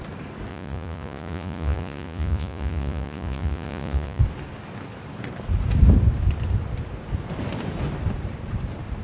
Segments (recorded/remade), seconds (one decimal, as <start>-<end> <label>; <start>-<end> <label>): 0.0-0.5 recorded; 0.5-4.2 remade; 4.2-9.0 recorded